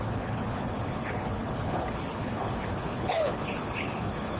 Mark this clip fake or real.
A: fake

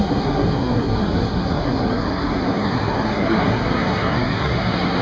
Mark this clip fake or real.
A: fake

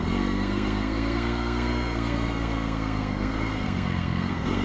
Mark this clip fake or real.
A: fake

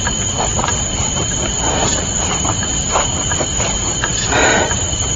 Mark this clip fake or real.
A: fake